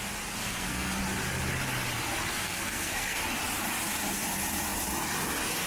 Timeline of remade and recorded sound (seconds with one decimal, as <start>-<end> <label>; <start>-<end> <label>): 0.0-0.4 recorded; 0.4-1.0 remade; 1.0-2.4 recorded; 2.4-3.2 remade; 3.2-5.7 recorded